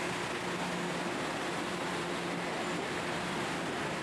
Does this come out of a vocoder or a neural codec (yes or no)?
no